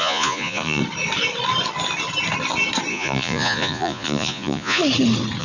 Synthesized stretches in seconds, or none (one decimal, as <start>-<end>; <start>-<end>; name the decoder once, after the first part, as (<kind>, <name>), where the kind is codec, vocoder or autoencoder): 0.0-0.8 (vocoder, Vocos); 2.9-4.8